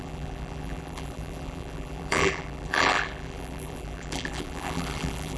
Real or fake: fake